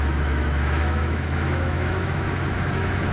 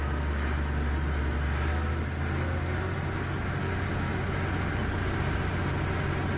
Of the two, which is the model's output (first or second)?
first